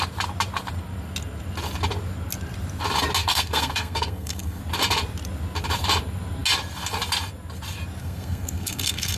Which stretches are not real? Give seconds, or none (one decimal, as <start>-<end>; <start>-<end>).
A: 3.2-4.6; 8.0-9.2